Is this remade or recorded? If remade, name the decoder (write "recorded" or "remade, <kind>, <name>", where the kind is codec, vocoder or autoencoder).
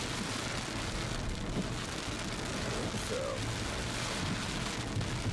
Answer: recorded